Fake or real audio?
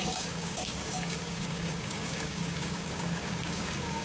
fake